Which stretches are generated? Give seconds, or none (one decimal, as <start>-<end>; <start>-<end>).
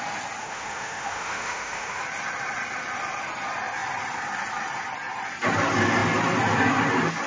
0.4-2.0